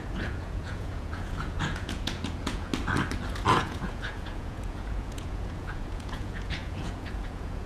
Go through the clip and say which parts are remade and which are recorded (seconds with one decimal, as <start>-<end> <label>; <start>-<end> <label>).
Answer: 0.0-2.7 remade; 2.7-3.5 recorded; 3.5-7.7 remade